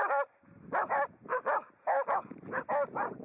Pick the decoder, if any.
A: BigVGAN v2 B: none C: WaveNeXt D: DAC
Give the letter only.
B